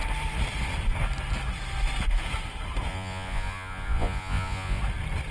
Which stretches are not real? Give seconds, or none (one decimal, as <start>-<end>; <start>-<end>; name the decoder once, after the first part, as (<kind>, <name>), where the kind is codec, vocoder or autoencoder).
2.9-4.8 (vocoder, Vocos)